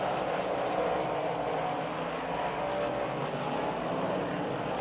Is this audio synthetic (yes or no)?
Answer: no